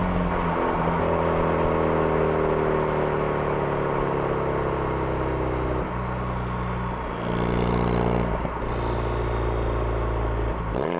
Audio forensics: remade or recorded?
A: recorded